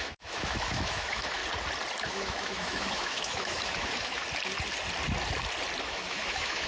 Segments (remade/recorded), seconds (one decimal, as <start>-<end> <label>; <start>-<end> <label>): 0.0-1.4 remade; 1.4-2.1 recorded; 2.1-4.2 remade; 4.2-5.8 recorded; 5.8-6.7 remade